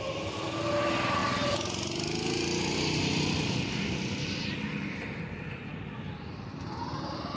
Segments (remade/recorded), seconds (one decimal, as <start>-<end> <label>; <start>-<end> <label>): 0.0-7.4 recorded